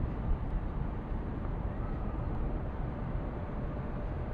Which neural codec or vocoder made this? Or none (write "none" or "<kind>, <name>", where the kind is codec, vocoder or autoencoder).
vocoder, BigVGAN v2